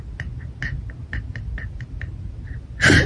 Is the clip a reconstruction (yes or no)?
no